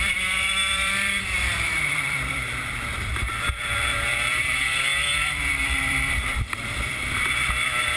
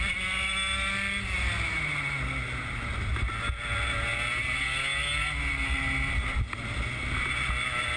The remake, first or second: first